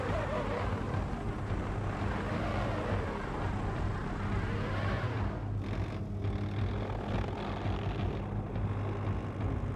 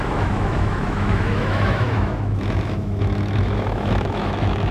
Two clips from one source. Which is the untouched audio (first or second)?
first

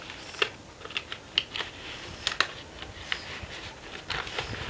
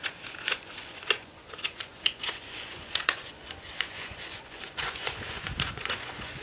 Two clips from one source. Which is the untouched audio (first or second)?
first